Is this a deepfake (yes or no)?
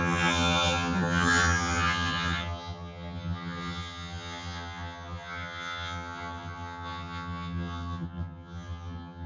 yes